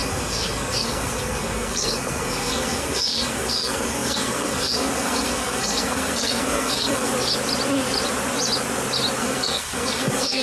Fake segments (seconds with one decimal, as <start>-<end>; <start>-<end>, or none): 0.0-7.1; 9.2-10.4